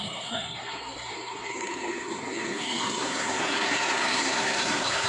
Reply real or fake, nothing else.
fake